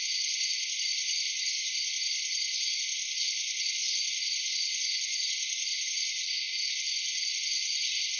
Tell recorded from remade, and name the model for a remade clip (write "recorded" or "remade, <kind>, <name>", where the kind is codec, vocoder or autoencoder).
recorded